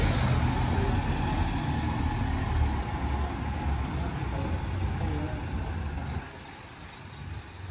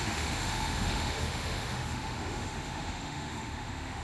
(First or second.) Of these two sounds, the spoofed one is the second